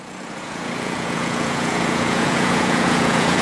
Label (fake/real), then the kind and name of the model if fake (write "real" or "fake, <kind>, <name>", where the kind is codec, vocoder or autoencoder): fake, vocoder, Vocos